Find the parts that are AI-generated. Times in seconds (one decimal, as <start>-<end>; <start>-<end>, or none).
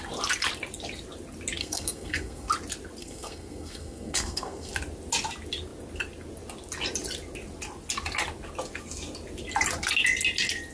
1.6-2.5; 3.0-4.7